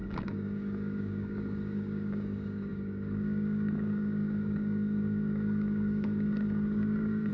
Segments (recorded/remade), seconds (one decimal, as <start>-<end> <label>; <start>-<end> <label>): 0.0-7.3 remade

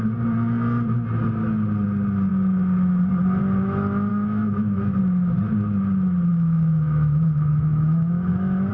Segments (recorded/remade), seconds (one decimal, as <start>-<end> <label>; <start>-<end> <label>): 0.0-4.1 recorded; 4.1-5.0 remade; 5.0-6.3 recorded; 6.3-8.7 remade